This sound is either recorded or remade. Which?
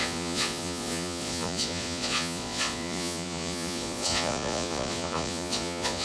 remade